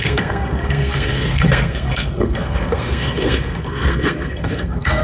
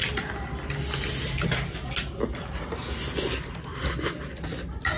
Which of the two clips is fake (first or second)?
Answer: first